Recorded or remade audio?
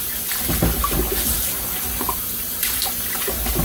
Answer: recorded